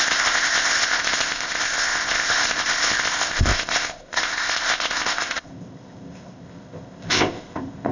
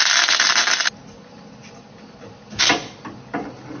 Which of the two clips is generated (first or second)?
first